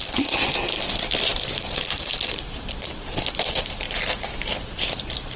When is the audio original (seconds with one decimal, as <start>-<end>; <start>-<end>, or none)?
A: 0.0-5.4